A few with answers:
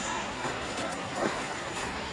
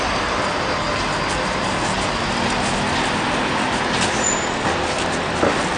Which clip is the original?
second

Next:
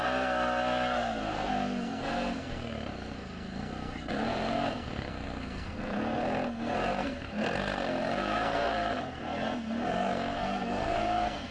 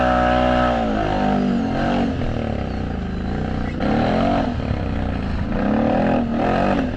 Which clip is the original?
second